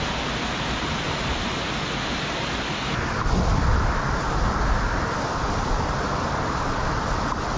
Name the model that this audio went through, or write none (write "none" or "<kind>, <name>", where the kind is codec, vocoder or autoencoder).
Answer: none